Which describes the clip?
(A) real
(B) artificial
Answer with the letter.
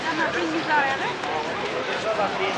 B